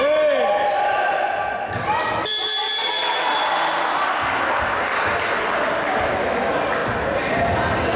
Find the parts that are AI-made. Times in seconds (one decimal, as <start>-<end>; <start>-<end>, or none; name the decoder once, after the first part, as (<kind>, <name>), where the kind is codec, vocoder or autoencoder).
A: none